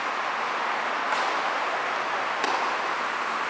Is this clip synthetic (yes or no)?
no